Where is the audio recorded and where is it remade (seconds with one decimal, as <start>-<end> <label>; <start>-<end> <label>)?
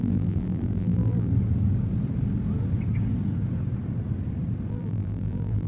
0.0-1.3 remade; 1.3-4.7 recorded; 4.7-5.7 remade